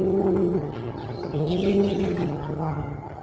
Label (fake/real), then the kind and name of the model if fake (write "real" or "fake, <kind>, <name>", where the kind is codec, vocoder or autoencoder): fake, vocoder, HiFi-GAN